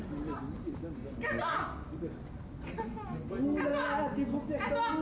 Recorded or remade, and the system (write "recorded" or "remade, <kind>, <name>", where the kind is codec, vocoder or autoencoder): recorded